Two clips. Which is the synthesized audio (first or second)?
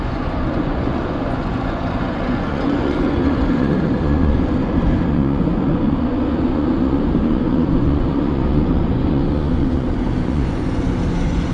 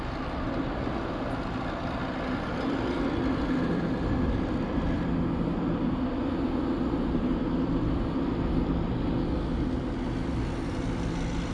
first